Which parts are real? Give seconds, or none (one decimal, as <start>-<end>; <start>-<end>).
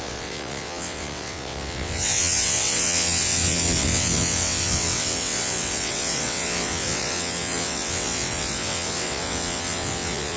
none